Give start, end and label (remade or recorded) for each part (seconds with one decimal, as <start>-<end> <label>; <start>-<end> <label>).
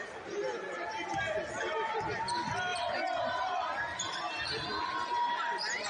0.0-5.9 recorded